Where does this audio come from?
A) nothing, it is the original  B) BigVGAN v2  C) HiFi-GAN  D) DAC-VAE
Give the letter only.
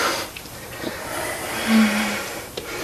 B